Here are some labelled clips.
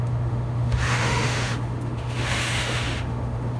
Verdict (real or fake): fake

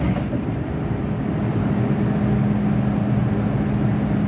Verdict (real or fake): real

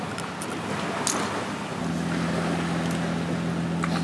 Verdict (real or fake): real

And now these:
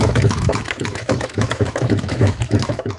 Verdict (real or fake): fake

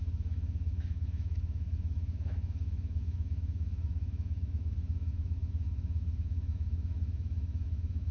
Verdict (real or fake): fake